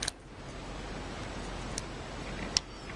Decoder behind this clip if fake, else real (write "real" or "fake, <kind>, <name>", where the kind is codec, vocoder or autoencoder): real